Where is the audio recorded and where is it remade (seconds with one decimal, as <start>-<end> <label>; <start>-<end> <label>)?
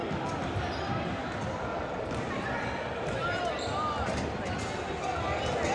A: 0.0-3.4 remade; 3.4-5.7 recorded